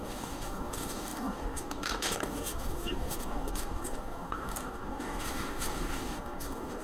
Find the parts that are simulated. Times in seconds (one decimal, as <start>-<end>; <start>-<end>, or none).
0.0-6.8